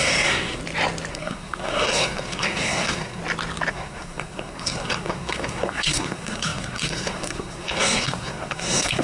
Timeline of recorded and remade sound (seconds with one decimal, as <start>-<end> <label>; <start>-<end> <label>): 0.0-0.6 remade; 0.6-1.1 recorded; 1.1-3.2 remade; 3.2-3.7 recorded; 3.7-9.0 remade